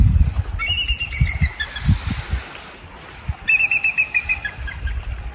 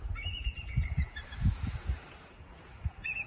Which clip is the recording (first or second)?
first